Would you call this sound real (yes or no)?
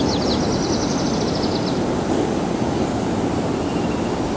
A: yes